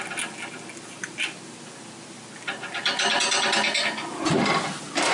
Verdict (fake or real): real